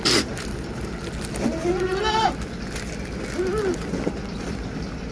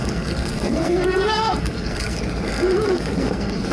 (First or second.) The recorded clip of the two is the first